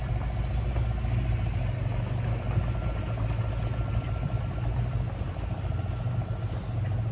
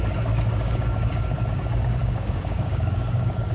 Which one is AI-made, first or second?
second